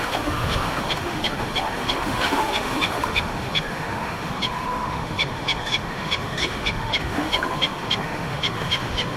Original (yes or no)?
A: no